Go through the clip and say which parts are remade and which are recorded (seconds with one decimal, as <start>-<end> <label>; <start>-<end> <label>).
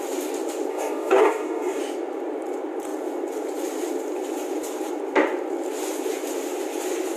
0.0-0.7 recorded; 0.7-1.8 remade; 1.8-7.2 recorded